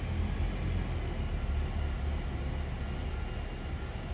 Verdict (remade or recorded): recorded